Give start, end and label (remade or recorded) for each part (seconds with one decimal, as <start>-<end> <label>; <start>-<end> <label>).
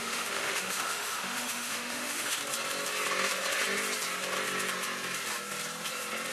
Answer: 0.0-2.4 remade; 2.4-6.3 recorded